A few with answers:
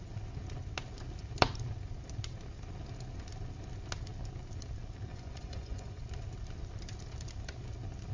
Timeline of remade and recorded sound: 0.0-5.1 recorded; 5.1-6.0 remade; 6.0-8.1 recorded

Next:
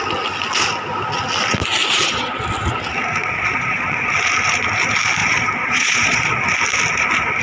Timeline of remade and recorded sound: 0.0-1.8 recorded; 1.8-2.4 remade; 2.4-3.2 recorded; 3.2-4.1 remade; 4.1-5.2 recorded; 5.2-6.4 remade; 6.4-7.4 recorded

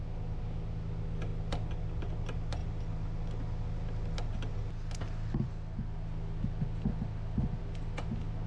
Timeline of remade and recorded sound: 0.0-8.5 recorded

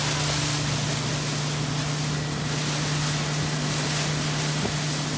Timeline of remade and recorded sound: 0.0-5.2 recorded